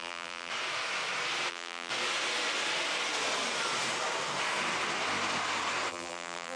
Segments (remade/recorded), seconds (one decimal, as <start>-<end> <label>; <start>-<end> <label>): 0.0-0.5 remade; 0.5-1.5 recorded; 1.5-1.9 remade; 1.9-5.9 recorded; 5.9-6.6 remade